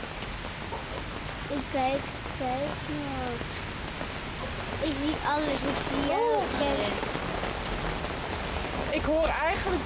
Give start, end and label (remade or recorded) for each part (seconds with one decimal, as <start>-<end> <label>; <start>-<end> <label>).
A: 0.0-9.9 recorded